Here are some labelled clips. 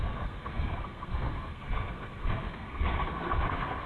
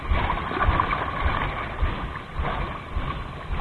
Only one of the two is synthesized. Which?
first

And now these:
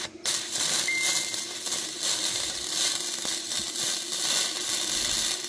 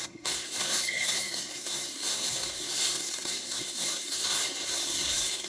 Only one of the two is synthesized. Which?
second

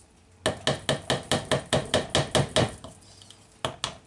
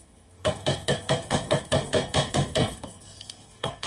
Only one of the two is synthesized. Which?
second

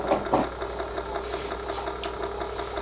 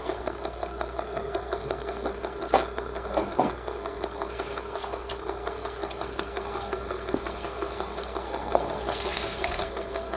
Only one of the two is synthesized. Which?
second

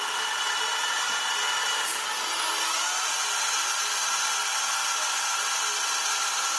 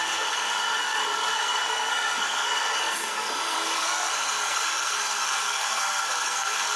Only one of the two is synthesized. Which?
second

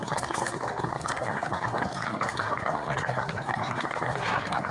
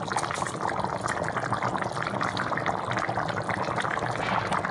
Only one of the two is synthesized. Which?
first